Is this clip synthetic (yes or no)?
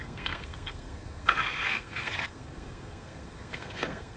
yes